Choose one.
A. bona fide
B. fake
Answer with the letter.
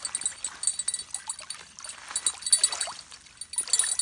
A